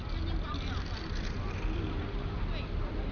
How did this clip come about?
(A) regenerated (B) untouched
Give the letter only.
B